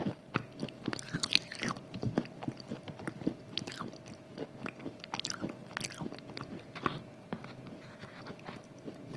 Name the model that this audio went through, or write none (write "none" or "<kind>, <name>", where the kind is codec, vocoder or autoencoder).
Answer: none